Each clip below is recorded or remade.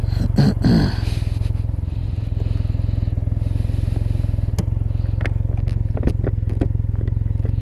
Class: recorded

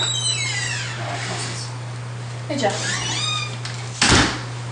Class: recorded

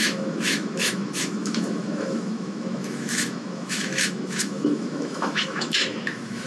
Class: remade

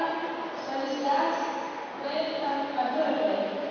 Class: recorded